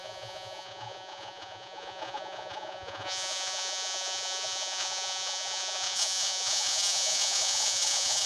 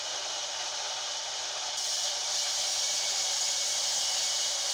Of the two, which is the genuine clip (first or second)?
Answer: second